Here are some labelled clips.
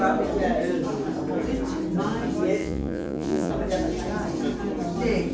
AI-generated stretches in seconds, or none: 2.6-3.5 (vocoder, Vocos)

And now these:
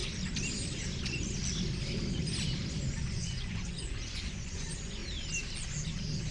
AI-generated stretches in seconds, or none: 3.1-5.0 (vocoder, Vocos)

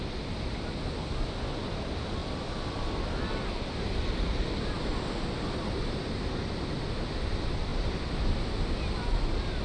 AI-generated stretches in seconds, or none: 2.2-3.3 (vocoder, BigVGAN v2); 7.7-8.6